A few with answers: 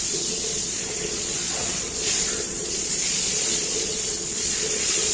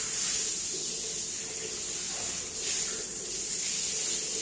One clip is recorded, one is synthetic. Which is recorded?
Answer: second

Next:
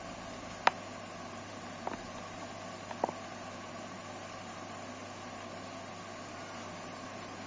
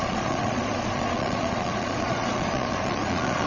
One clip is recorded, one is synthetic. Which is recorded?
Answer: first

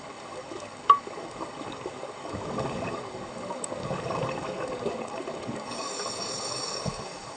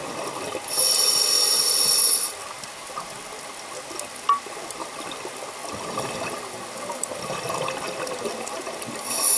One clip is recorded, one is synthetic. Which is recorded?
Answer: second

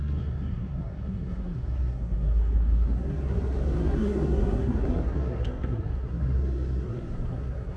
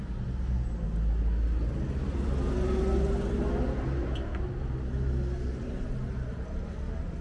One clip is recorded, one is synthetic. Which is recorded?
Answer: second